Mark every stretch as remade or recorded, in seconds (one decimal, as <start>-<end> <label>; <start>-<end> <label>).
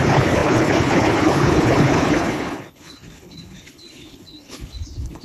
0.0-5.2 remade